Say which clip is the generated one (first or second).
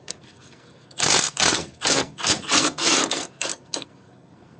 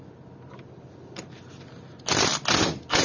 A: first